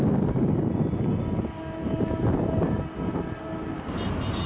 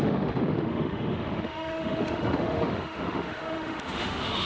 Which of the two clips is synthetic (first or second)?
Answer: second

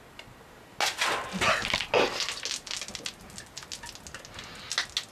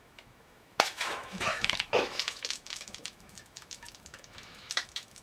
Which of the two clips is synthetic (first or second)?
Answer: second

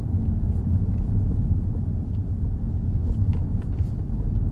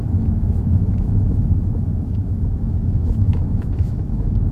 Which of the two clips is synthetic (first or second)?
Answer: second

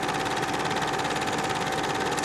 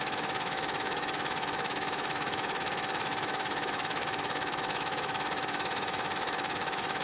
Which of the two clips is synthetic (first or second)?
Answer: second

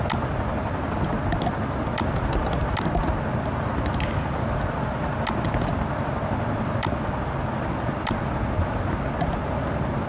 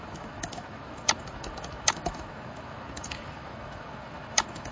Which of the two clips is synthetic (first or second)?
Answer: second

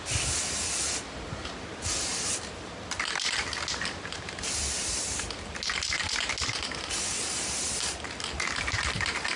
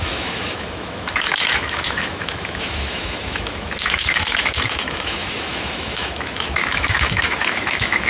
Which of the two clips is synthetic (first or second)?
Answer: second